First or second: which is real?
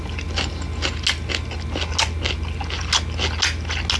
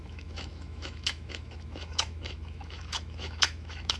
first